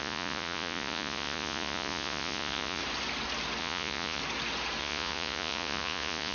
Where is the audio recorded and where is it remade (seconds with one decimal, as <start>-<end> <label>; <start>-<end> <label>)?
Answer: 0.0-2.8 remade; 2.8-3.6 recorded; 3.6-4.2 remade; 4.2-4.8 recorded; 4.8-6.3 remade